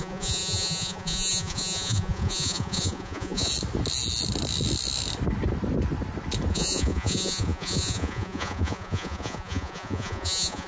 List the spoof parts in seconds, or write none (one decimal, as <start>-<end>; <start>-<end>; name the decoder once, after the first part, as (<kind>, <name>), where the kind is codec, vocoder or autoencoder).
0.0-3.5 (vocoder, Vocos); 6.5-10.7